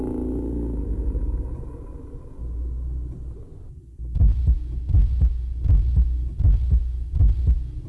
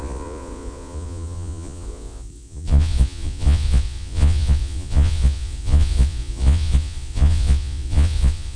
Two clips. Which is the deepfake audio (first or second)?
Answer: second